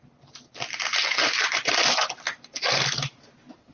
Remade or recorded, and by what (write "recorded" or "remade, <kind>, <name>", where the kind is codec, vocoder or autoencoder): recorded